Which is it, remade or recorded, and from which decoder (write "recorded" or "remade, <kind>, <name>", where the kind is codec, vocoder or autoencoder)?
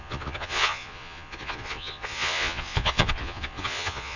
remade, vocoder, Vocos